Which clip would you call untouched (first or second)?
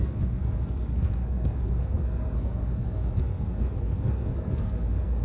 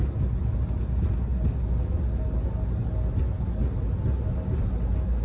second